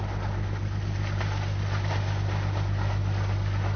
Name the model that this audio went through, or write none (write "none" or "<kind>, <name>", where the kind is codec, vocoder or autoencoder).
none